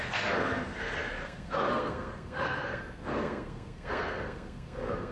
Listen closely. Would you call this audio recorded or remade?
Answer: remade